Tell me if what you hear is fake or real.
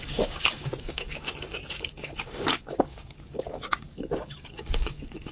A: fake